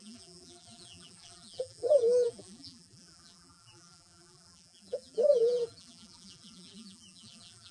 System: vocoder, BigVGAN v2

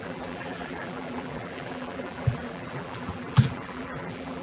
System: vocoder, BigVGAN v2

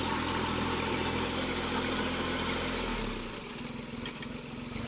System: none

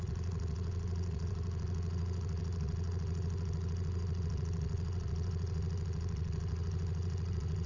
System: vocoder, Vocos